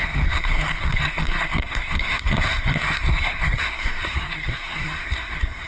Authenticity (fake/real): fake